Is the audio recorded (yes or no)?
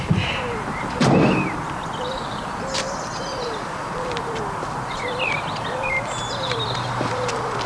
no